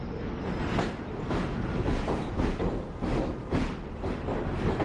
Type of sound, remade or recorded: recorded